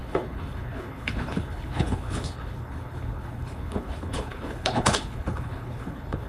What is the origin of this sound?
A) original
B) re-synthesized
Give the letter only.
B